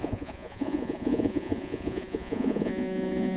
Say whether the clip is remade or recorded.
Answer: remade